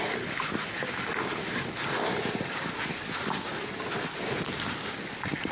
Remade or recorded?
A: recorded